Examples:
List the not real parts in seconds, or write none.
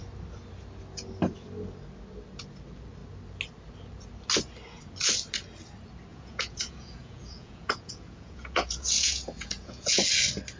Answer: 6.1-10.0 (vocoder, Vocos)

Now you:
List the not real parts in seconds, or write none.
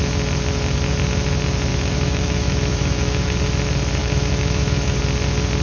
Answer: 1.7-3.4 (autoencoder, DAC-VAE); 4.0-5.0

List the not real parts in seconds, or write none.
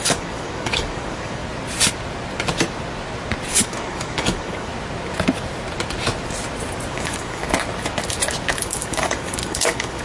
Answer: 0.0-1.4 (codec, DAC); 3.5-4.7; 6.9-7.4; 8.6-10.0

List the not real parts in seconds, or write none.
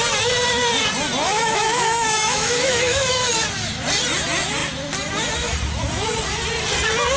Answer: 1.3-3.3 (autoencoder, DAC-VAE)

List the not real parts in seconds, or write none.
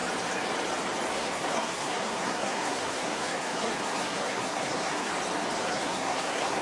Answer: 1.1-5.1 (codec, SNAC); 5.6-6.6